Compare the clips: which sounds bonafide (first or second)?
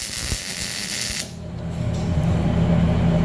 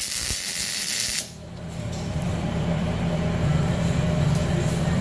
first